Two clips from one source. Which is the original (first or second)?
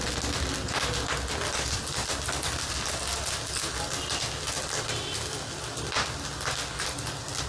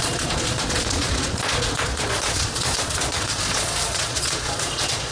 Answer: first